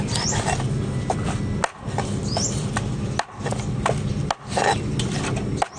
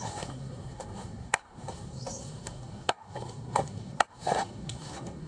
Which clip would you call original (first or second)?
first